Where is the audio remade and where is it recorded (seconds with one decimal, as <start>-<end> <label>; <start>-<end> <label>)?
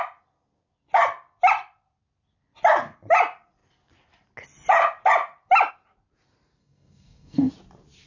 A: 0.0-6.6 recorded; 6.6-7.5 remade; 7.5-8.1 recorded